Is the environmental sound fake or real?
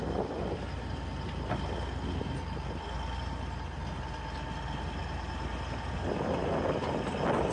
real